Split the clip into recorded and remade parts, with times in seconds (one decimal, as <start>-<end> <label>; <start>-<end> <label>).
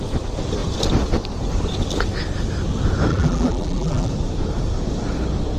0.0-3.1 recorded; 3.1-4.1 remade; 4.1-5.6 recorded